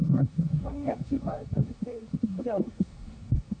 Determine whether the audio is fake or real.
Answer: fake